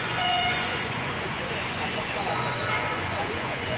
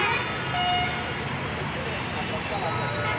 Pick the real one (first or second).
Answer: second